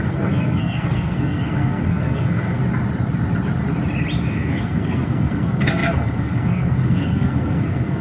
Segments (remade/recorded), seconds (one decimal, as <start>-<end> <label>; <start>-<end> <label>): 0.0-2.6 remade; 2.6-4.3 recorded; 4.3-8.0 remade